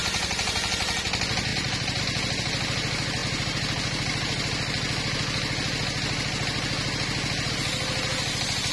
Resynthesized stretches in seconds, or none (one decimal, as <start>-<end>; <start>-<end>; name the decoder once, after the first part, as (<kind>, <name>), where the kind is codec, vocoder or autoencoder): 1.5-2.0 (vocoder, BigVGAN v2)